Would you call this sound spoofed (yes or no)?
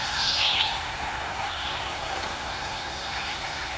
yes